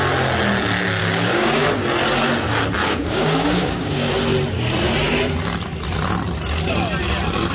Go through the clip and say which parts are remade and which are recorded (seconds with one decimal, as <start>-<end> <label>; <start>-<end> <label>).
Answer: 0.0-1.0 recorded; 1.0-1.7 remade; 1.7-2.8 recorded; 2.8-4.1 remade; 4.1-7.5 recorded